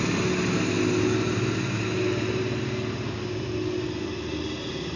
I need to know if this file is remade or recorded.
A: recorded